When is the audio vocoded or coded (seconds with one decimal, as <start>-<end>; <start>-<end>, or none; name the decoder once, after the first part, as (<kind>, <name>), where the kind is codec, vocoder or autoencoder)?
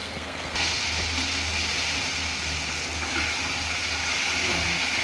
0.0-0.8 (codec, SNAC)